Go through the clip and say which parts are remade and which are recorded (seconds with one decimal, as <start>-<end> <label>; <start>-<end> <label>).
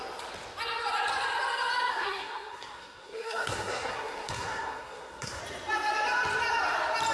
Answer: 0.0-1.9 recorded; 1.9-5.4 remade; 5.4-7.1 recorded